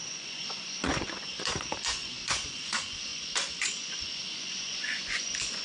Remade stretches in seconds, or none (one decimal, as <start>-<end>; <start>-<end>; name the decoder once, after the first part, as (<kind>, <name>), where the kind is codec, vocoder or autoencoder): 0.0-5.6 (vocoder, Vocos)